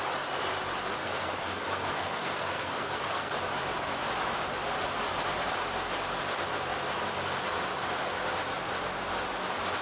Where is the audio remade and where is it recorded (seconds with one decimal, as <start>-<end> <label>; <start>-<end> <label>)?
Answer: 0.0-1.0 recorded; 1.0-3.3 remade; 3.3-9.8 recorded